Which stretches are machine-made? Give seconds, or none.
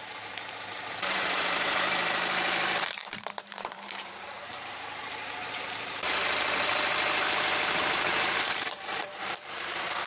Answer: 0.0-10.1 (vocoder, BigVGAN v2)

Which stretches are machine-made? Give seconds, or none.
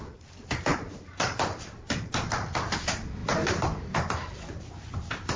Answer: 0.7-1.7 (vocoder, BigVGAN v2); 3.2-4.6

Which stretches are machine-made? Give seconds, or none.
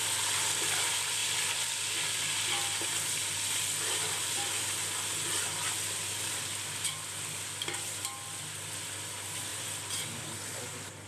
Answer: none